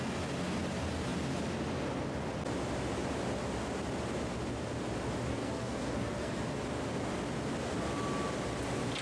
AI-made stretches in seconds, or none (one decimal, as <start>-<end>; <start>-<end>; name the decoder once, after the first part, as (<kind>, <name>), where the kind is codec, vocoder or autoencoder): 5.3-6.4 (codec, SNAC)